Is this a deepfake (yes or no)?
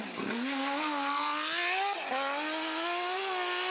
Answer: no